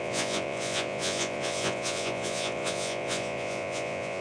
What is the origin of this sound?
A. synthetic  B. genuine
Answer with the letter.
A